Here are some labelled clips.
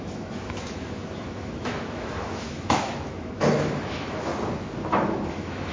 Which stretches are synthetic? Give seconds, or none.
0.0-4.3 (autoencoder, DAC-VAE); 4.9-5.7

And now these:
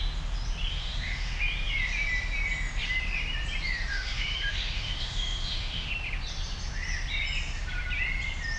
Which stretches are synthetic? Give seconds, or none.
0.7-1.4 (autoencoder, DAC-VAE); 3.9-5.9

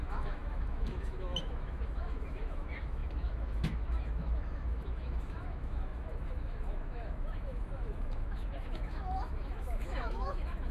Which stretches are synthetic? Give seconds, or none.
0.0-10.7 (autoencoder, DAC-VAE)

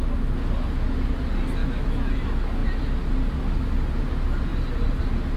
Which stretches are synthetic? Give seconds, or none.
1.6-2.1 (autoencoder, DAC-VAE)

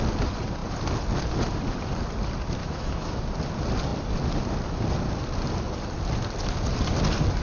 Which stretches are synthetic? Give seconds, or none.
2.6-3.2 (autoencoder, DAC-VAE)

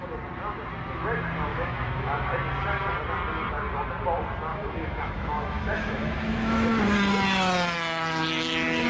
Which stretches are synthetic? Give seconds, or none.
1.5-2.3 (autoencoder, DAC-VAE); 4.5-6.7

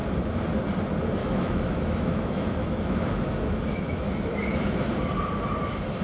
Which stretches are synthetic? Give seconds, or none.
1.2-4.8 (autoencoder, DAC-VAE)

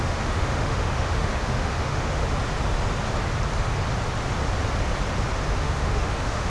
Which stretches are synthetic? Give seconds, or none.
0.0-2.2 (autoencoder, DAC-VAE); 5.6-6.5